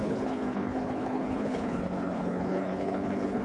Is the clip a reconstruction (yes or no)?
yes